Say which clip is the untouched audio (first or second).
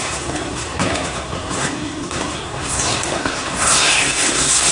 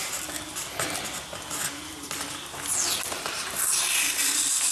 second